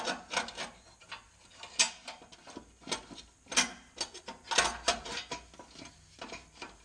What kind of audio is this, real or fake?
real